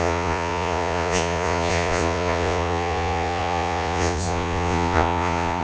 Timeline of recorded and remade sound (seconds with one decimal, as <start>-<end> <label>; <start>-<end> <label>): 0.0-5.6 remade